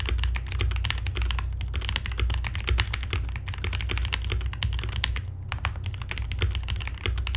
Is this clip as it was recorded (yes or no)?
yes